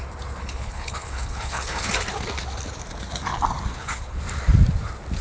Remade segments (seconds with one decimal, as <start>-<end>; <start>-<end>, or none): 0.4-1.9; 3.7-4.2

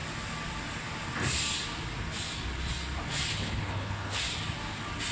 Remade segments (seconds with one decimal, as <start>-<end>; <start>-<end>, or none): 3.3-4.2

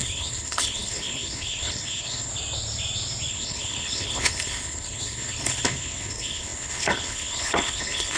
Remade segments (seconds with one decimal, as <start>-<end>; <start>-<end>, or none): 0.0-2.3; 3.3-8.2

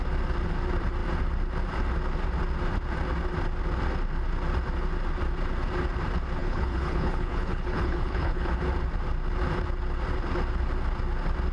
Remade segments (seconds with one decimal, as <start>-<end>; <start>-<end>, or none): 6.4-8.6

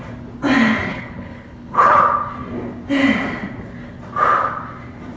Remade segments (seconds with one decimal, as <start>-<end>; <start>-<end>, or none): 0.9-2.0

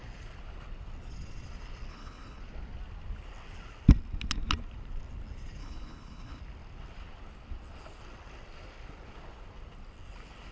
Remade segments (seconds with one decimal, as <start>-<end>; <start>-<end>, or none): 1.9-2.4; 5.6-6.4